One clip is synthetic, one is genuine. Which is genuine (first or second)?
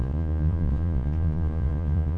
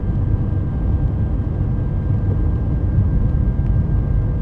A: second